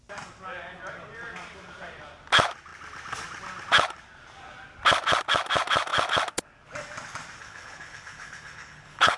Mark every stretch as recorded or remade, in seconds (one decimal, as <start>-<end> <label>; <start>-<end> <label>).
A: 0.0-7.4 recorded; 7.4-9.2 remade